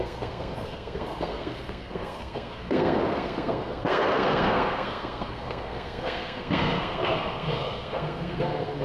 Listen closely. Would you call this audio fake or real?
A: fake